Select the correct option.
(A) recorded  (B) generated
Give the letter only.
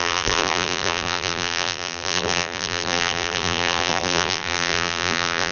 B